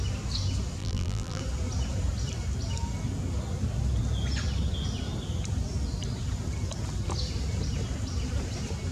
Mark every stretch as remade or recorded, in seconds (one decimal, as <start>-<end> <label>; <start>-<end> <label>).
0.0-0.8 recorded; 0.8-1.4 remade; 1.4-8.9 recorded